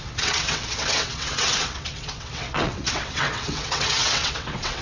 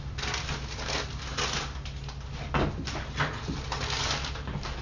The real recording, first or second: second